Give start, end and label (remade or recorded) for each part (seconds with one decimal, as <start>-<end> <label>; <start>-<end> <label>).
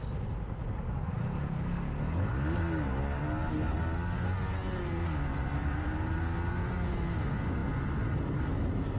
0.0-5.3 recorded; 5.3-6.2 remade; 6.2-7.6 recorded; 7.6-9.0 remade